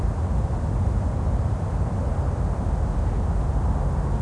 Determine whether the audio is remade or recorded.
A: recorded